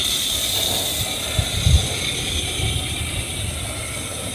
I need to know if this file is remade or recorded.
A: recorded